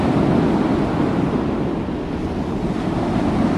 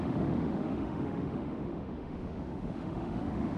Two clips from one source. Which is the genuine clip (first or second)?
first